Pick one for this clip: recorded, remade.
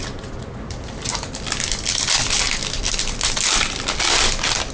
recorded